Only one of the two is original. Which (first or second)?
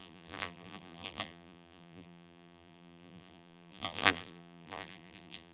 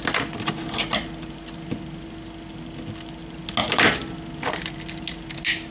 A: second